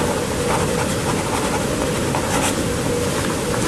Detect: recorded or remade recorded